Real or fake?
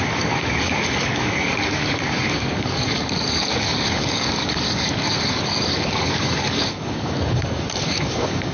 fake